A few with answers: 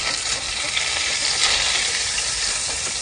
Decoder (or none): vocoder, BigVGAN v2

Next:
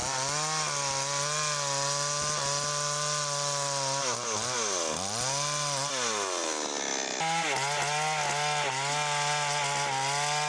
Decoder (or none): none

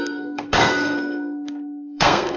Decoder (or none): codec, SNAC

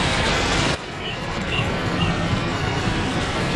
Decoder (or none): codec, SNAC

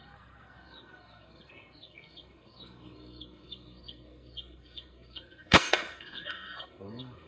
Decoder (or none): codec, SNAC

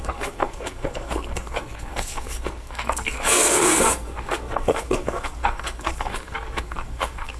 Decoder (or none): codec, SNAC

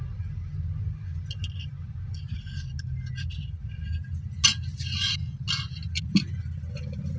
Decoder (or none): none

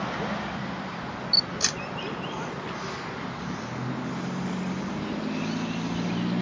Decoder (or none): none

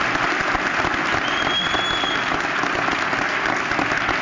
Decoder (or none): none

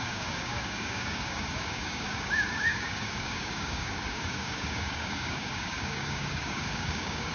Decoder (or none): codec, DAC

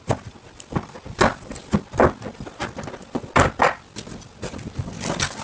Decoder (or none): none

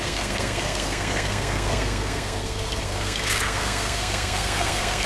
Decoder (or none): codec, SNAC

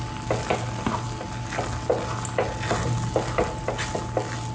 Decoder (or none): none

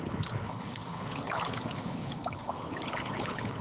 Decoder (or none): codec, HILCodec